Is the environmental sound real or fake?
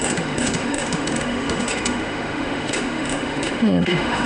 fake